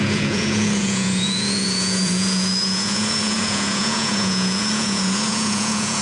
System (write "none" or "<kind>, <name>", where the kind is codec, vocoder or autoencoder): vocoder, Vocos